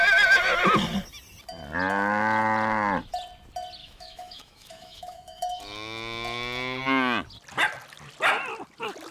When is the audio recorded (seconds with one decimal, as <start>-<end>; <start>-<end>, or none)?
0.0-3.8; 5.6-9.1